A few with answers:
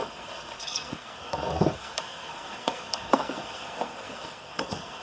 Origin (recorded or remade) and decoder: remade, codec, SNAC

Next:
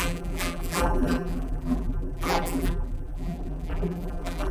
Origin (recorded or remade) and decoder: remade, vocoder, BigVGAN v2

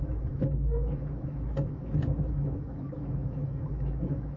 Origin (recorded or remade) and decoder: remade, autoencoder, DAC-VAE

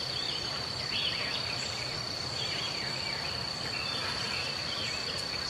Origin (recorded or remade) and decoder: remade, vocoder, BigVGAN v2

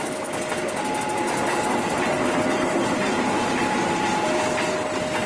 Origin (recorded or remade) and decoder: recorded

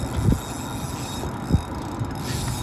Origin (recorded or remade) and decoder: recorded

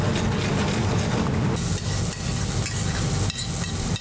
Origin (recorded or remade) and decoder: recorded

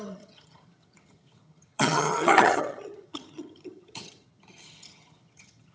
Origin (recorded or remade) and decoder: remade, vocoder, HiFi-GAN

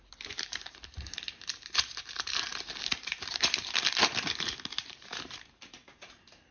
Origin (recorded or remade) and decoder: remade, vocoder, BigVGAN v2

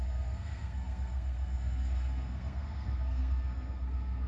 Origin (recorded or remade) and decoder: remade, codec, SNAC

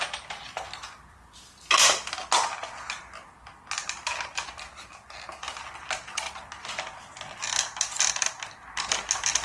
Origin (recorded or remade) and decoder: recorded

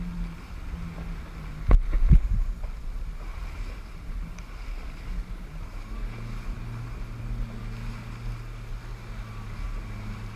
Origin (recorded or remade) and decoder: recorded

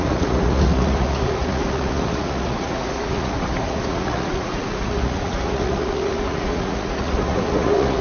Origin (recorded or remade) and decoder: remade, vocoder, Vocos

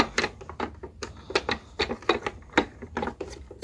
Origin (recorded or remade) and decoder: recorded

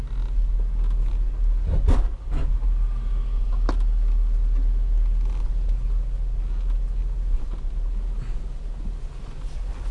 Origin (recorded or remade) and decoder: recorded